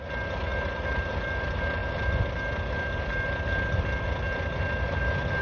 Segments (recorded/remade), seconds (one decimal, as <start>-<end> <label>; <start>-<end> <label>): 0.0-0.5 recorded; 0.5-1.1 remade; 1.1-5.4 recorded